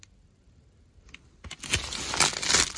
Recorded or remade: recorded